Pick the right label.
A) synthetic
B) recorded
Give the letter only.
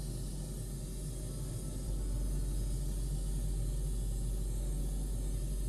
B